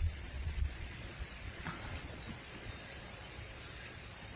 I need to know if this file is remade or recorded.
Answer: remade